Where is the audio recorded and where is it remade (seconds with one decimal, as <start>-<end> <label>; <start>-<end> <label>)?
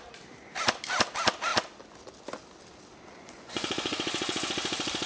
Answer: 0.0-3.1 recorded; 3.1-4.5 remade; 4.5-5.1 recorded